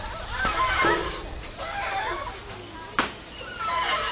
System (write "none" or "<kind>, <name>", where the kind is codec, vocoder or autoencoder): none